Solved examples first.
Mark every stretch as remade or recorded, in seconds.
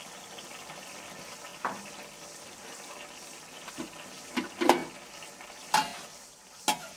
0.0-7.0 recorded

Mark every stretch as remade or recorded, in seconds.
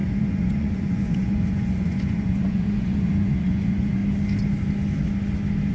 0.0-4.0 remade; 4.0-5.7 recorded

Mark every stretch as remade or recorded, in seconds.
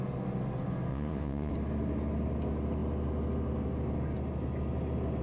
0.0-0.9 recorded; 0.9-1.5 remade; 1.5-5.2 recorded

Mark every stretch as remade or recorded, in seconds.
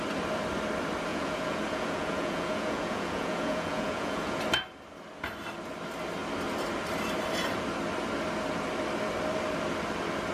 0.0-1.1 recorded; 1.1-4.4 remade; 4.4-10.3 recorded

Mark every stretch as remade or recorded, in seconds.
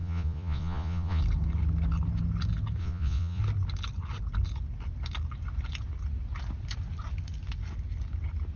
0.0-1.2 remade; 1.2-2.8 recorded; 2.8-3.4 remade; 3.4-8.6 recorded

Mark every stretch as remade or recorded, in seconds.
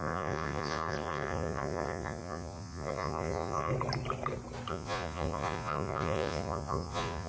0.0-3.7 remade; 3.7-4.7 recorded; 4.7-7.3 remade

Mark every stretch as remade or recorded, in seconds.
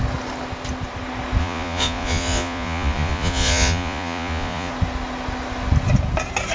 0.0-1.4 recorded; 1.4-4.7 remade; 4.7-6.5 recorded